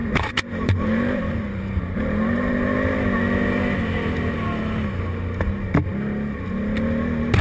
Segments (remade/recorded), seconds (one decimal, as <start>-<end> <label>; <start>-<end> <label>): 0.0-2.5 remade; 2.5-7.4 recorded